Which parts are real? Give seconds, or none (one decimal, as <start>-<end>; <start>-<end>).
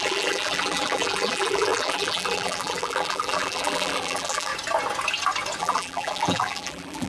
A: 4.5-5.6